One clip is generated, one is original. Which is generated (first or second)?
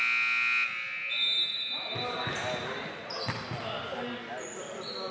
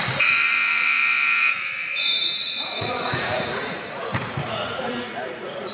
second